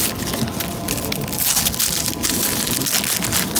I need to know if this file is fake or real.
real